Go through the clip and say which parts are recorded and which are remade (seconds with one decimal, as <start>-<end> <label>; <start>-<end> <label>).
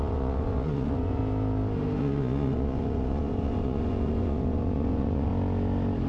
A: 0.0-1.2 remade; 1.2-2.0 recorded; 2.0-5.3 remade; 5.3-6.1 recorded